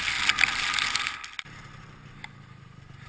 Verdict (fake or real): real